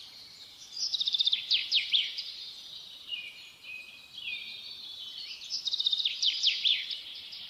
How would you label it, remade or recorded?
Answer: remade